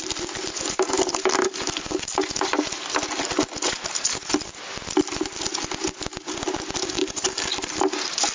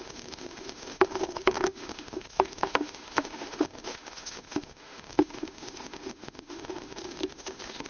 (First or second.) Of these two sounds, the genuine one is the first